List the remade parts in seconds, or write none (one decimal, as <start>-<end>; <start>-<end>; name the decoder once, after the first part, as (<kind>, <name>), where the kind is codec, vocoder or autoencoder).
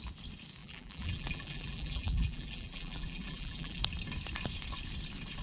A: 0.6-3.8 (vocoder, BigVGAN v2)